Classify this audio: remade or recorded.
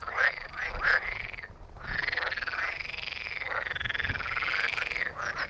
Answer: recorded